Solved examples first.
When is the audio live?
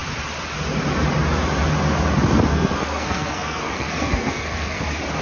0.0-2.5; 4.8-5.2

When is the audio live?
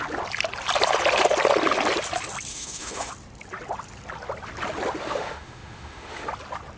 0.0-2.5; 3.1-5.0; 6.3-6.8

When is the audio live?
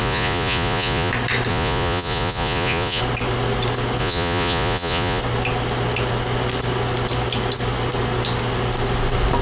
1.1-1.5; 3.0-4.0; 5.2-9.4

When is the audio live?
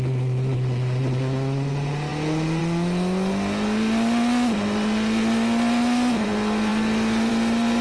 0.0-7.8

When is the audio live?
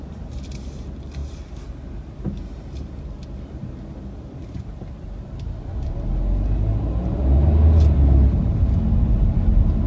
0.0-9.9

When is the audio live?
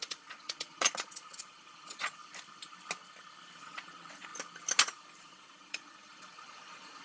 2.2-3.5; 4.3-5.2